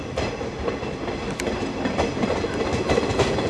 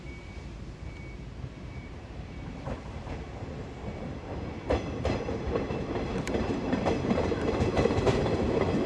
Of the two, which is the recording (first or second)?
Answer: first